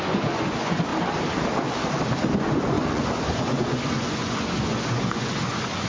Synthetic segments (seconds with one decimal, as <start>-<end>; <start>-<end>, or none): 0.0-0.9; 2.4-5.9